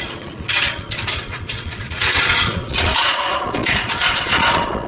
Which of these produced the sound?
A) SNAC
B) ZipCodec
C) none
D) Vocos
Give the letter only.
D